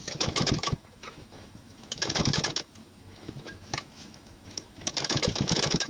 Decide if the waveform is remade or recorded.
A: remade